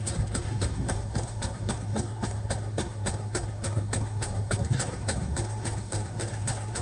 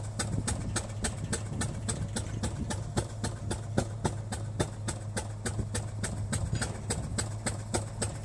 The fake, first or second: first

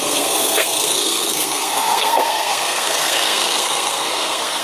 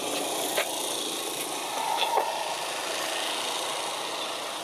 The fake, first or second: first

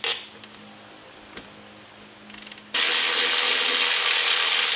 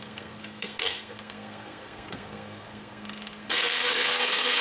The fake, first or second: second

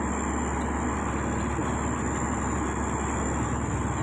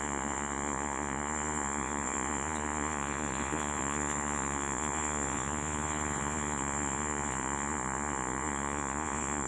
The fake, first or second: second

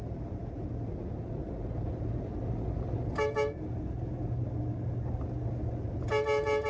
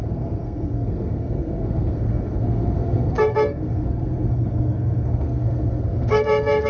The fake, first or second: second